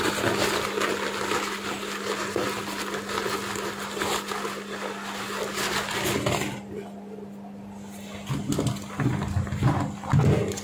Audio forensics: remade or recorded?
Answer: recorded